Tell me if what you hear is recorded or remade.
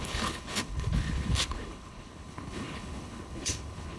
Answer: remade